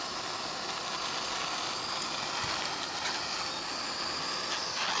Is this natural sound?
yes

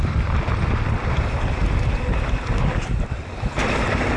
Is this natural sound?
yes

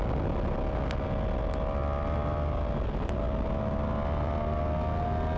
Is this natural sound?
yes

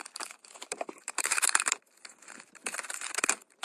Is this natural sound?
no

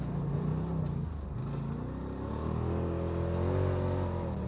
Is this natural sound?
yes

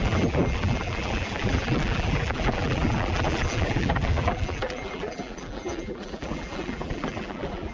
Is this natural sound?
no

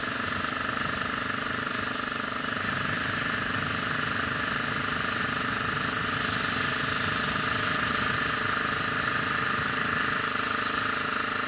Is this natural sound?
yes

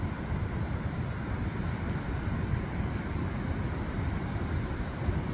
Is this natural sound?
yes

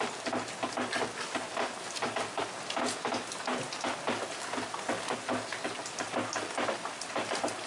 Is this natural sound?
yes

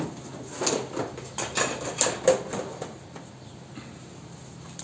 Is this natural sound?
yes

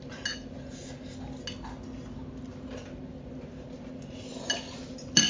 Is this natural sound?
yes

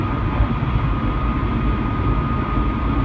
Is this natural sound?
yes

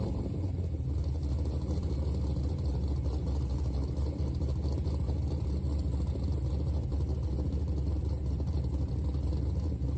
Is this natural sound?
no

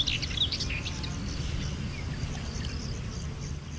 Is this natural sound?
yes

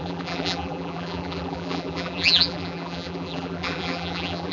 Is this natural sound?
no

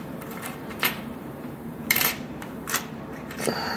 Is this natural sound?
no